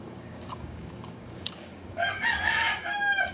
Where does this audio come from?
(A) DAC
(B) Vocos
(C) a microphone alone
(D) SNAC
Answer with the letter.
A